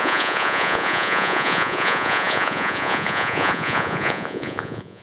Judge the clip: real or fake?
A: fake